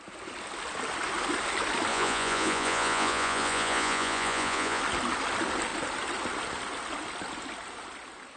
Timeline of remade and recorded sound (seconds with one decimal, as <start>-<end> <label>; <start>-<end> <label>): 0.0-1.9 recorded; 1.9-4.8 remade; 4.8-8.4 recorded